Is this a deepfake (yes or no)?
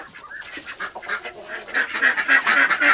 no